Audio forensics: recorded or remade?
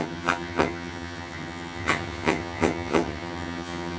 remade